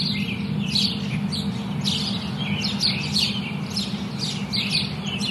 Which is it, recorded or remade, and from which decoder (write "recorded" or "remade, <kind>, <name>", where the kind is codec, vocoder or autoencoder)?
recorded